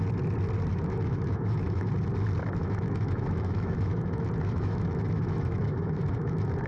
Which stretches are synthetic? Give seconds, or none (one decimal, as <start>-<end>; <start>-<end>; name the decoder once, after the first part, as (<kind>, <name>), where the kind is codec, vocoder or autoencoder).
0.7-1.9 (autoencoder, DAC-VAE); 2.6-6.7